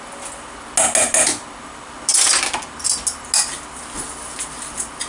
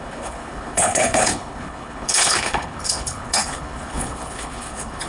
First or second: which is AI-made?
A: second